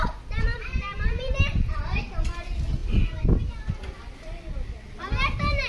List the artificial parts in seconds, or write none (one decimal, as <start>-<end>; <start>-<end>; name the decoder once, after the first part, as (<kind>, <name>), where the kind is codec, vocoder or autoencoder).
0.5-2.1 (vocoder, BigVGAN v2)